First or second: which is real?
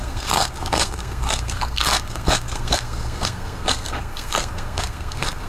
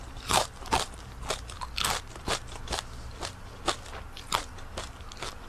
second